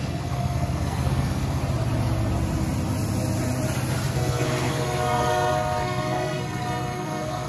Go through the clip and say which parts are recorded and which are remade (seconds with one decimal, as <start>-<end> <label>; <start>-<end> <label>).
0.0-1.6 remade; 1.6-4.1 recorded; 4.1-7.5 remade